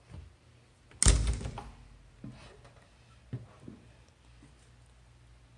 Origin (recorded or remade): recorded